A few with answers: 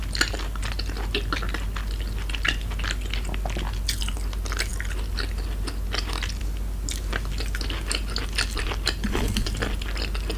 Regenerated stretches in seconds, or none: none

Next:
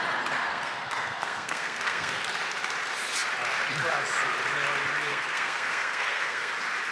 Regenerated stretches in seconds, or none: 0.5-2.2 (codec, SNAC); 5.1-6.5

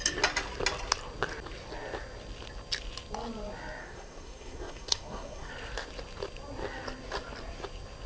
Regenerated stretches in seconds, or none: 3.8-5.5 (codec, SNAC)

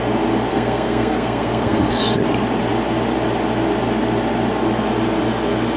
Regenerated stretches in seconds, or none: 0.5-2.0 (codec, SNAC)